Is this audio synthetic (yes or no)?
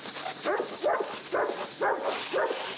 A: no